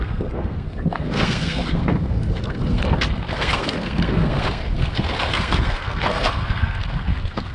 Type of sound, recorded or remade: remade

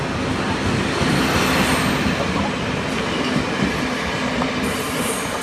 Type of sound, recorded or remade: recorded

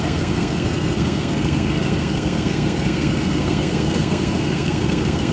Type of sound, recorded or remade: remade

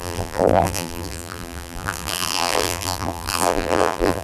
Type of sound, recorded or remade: remade